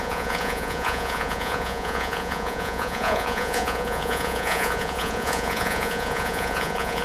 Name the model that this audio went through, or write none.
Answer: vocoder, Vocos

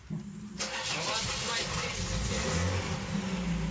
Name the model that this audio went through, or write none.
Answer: none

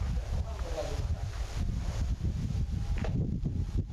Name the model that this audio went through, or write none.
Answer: none